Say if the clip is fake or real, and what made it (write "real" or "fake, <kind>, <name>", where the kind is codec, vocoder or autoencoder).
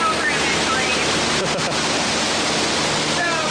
real